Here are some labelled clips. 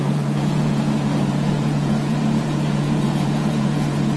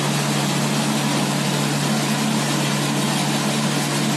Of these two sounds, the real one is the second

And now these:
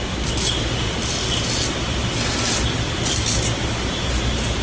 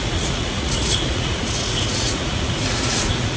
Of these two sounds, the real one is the first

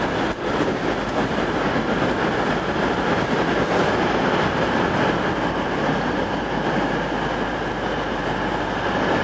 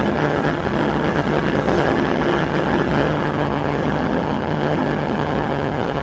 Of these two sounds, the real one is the first